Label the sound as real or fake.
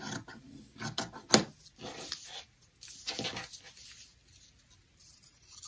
real